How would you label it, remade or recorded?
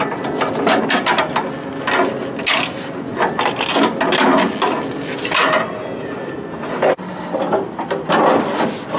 recorded